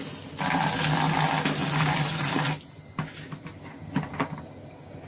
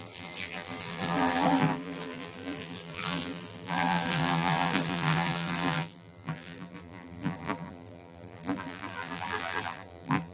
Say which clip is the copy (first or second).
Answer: second